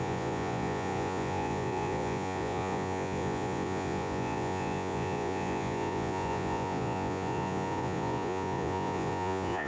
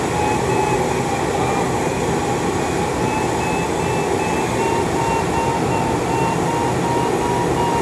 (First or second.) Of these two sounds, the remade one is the first